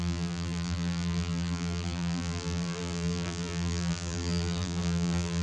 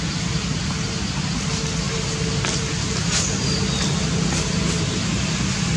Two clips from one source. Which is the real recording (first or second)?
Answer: second